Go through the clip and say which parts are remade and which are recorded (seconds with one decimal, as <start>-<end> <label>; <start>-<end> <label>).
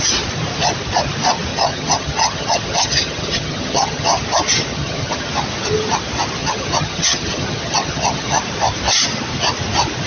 0.0-1.5 recorded; 1.5-4.2 remade; 4.2-4.7 recorded; 4.7-5.3 remade; 5.3-6.4 recorded; 6.4-8.4 remade; 8.4-10.1 recorded